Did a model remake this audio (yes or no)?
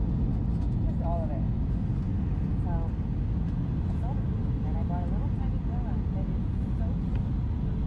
no